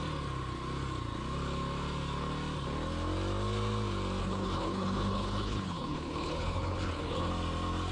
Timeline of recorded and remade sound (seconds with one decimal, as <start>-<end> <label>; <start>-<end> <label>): 0.0-4.2 recorded; 4.2-7.3 remade; 7.3-7.9 recorded